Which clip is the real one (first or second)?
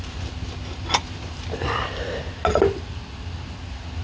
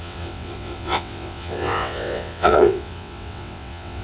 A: first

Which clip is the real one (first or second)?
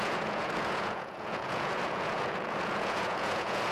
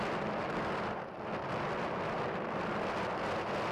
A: second